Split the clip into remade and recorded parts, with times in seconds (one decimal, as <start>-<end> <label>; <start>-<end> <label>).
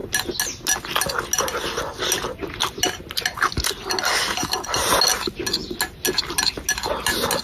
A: 0.0-7.4 recorded